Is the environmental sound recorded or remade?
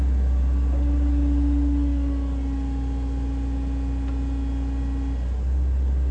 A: recorded